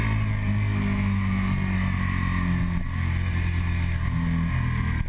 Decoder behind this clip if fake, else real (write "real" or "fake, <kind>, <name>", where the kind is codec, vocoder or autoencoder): real